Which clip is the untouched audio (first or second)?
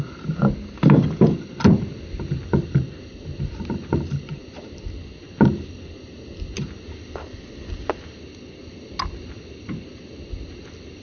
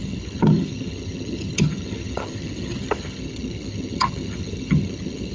first